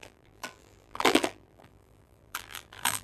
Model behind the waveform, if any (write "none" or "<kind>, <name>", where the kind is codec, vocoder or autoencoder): vocoder, BigVGAN v2